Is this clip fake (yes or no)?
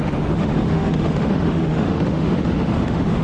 yes